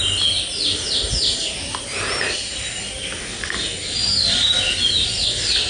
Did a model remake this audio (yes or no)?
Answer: no